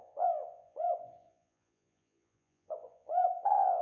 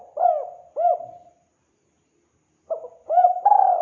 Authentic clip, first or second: second